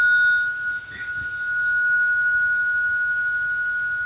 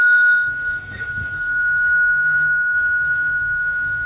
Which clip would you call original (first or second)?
first